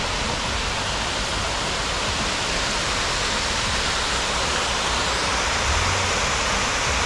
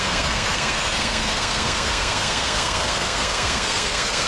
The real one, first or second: first